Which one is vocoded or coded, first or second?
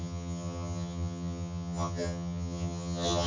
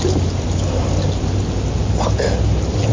first